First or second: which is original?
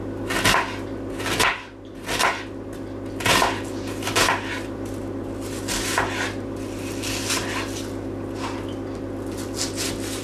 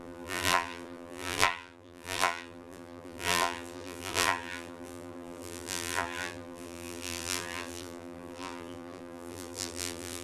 first